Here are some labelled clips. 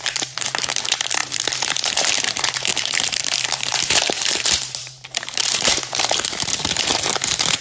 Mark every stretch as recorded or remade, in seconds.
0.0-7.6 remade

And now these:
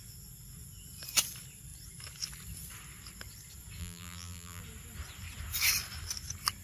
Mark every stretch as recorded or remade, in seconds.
0.0-3.8 recorded; 3.8-4.6 remade; 4.6-6.6 recorded